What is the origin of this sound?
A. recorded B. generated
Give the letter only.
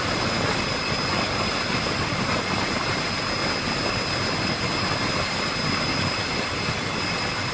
A